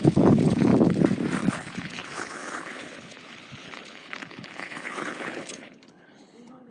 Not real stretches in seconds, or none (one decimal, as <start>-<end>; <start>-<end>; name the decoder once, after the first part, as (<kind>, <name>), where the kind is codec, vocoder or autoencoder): 0.0-0.7 (codec, HILCodec); 1.5-6.7